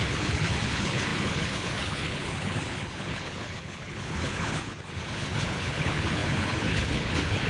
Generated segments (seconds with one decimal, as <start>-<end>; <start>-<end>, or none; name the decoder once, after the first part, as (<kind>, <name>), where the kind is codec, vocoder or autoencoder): 0.0-7.5 (codec, HILCodec)